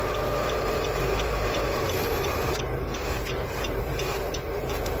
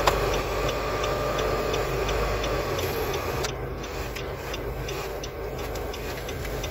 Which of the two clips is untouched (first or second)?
second